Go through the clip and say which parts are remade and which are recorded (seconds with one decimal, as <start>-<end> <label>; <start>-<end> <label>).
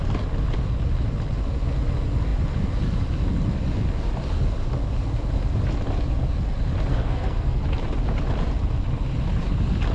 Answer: 0.0-6.9 recorded; 6.9-7.6 remade; 7.6-9.9 recorded